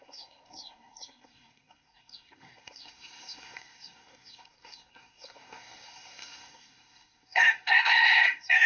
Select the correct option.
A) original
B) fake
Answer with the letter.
B